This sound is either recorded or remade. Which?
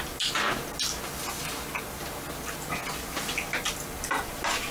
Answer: recorded